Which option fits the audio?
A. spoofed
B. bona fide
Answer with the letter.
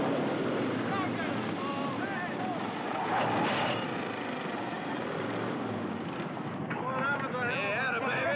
B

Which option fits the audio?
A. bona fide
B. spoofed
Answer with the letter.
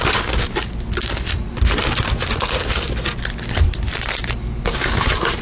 A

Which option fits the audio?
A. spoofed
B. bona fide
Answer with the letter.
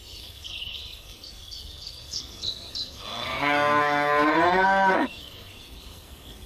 A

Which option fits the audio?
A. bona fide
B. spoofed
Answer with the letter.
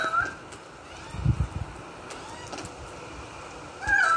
A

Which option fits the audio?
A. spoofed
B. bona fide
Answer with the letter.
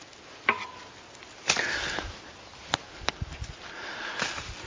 B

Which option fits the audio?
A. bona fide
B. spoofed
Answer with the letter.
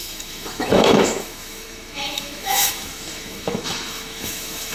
B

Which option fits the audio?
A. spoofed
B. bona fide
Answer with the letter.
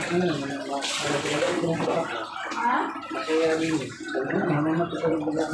B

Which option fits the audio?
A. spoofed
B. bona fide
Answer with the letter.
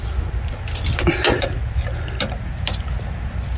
B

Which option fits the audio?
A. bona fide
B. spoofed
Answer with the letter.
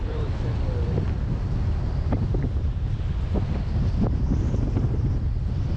A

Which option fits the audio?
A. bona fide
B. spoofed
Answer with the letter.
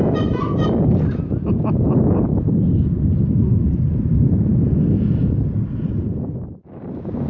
A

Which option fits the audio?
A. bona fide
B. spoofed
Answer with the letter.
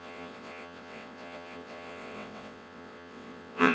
B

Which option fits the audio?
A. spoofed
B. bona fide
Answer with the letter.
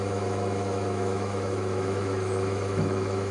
A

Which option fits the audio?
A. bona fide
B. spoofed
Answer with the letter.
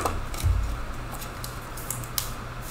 A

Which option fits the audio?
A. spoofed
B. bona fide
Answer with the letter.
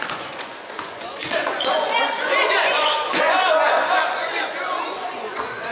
A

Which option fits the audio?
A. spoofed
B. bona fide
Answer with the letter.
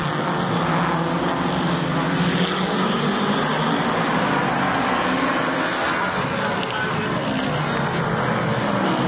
B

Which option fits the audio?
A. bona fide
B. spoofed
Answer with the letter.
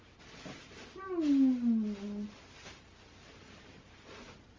A